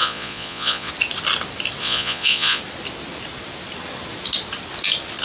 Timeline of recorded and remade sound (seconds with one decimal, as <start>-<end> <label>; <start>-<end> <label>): 0.0-0.9 remade; 0.9-1.8 recorded; 1.8-2.6 remade; 2.6-5.2 recorded